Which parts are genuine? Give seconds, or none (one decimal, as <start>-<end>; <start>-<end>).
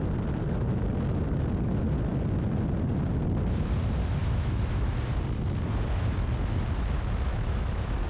0.0-4.2; 4.8-7.3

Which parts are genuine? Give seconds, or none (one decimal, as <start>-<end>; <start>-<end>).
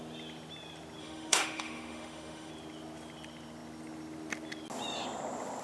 0.0-1.0; 2.5-5.6